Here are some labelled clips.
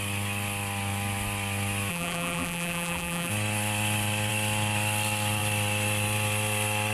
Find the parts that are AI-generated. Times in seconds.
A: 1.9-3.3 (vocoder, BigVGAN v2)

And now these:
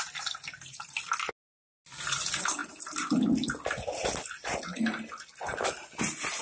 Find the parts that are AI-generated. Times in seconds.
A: none

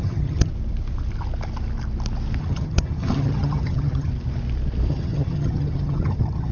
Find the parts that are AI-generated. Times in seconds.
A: 0.0-0.5 (vocoder, HiFi-GAN); 2.4-4.1; 4.9-6.5

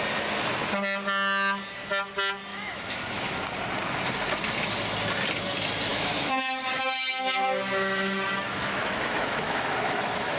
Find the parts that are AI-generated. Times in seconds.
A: 2.5-3.4 (autoencoder, DAC-VAE); 5.9-10.4

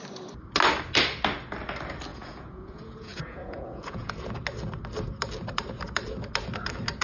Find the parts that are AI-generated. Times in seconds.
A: 2.1-4.1 (vocoder, Vocos)